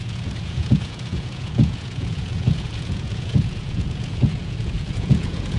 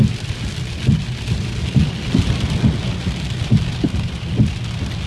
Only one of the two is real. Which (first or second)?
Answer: second